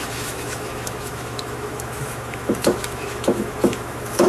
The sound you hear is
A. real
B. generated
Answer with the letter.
B